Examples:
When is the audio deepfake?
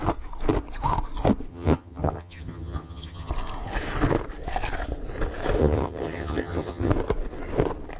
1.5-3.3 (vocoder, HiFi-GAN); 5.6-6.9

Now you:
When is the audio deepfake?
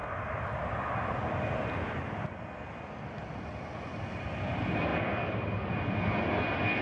none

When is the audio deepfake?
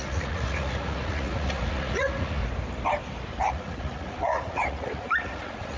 0.0-2.4 (vocoder, Vocos); 3.5-5.8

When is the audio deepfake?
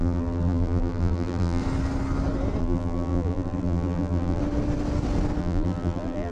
0.0-1.6 (vocoder, BigVGAN v2); 2.6-4.4; 5.4-6.3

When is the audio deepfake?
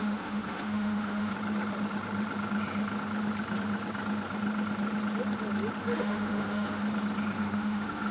0.0-1.3 (autoencoder, DAC-VAE); 6.0-6.8; 7.4-8.1